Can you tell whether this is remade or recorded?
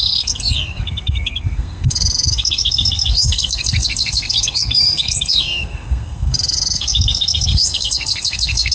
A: remade